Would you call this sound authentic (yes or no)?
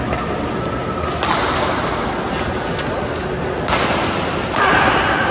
yes